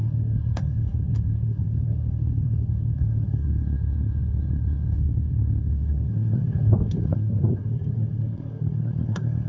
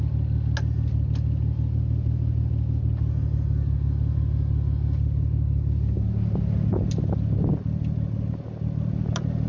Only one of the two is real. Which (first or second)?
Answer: second